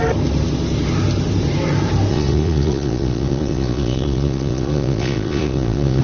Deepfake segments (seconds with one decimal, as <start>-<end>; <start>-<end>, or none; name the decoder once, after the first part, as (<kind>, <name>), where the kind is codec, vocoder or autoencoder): 2.1-6.0 (vocoder, Vocos)

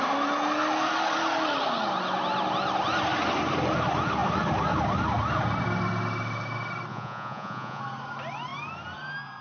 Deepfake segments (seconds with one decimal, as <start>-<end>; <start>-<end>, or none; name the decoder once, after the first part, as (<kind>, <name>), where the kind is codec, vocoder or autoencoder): 6.9-7.8 (vocoder, Vocos)